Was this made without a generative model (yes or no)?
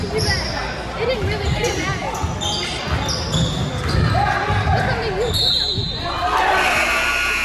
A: yes